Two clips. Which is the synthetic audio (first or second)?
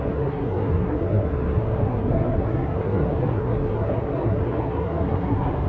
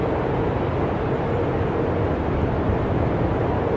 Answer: first